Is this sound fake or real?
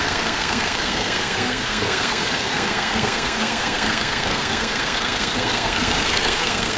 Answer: fake